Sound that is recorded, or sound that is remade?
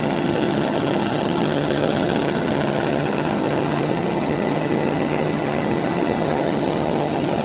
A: remade